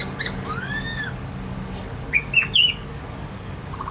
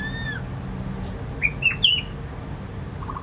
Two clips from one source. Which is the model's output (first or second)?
first